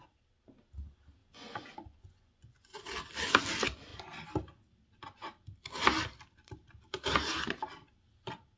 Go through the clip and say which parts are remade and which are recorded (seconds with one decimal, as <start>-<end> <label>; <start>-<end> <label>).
0.0-1.2 recorded; 1.2-2.8 remade; 2.8-8.6 recorded